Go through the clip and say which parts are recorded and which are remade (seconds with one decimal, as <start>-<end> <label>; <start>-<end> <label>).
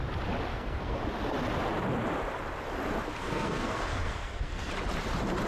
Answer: 0.0-0.5 recorded; 0.5-1.0 remade; 1.0-3.2 recorded; 3.2-4.7 remade; 4.7-5.5 recorded